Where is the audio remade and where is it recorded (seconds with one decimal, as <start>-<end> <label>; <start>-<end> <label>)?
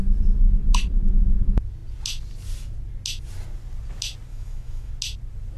0.0-4.3 recorded; 4.3-4.9 remade; 4.9-5.6 recorded